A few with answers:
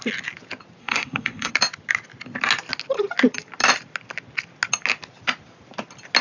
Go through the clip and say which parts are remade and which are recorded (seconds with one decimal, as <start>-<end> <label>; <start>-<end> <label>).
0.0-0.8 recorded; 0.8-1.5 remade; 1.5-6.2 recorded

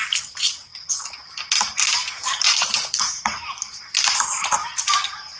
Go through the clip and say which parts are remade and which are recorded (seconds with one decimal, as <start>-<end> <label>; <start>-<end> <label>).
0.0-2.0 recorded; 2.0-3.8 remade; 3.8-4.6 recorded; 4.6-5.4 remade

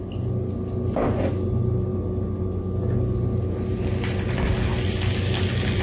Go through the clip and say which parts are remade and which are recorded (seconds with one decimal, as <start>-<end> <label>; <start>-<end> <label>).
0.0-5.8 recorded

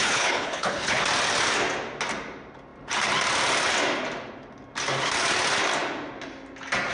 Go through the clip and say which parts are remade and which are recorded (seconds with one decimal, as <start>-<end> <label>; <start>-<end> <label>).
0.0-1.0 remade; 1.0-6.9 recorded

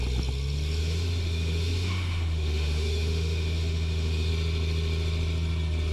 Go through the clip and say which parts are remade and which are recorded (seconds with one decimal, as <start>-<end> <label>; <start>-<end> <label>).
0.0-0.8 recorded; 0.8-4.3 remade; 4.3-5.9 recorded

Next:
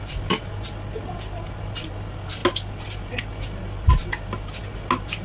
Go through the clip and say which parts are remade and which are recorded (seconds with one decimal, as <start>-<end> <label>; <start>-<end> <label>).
0.0-5.2 recorded

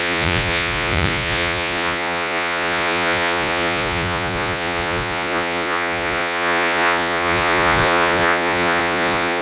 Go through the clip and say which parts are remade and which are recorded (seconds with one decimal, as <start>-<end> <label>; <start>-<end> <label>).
0.0-9.4 remade

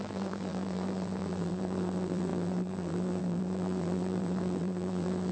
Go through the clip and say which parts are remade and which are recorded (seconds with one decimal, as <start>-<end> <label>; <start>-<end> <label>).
0.0-5.3 remade